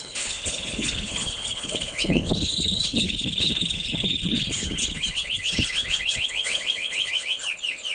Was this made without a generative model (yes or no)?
no